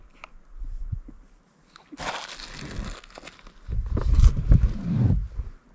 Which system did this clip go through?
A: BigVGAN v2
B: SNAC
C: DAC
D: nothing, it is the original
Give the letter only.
D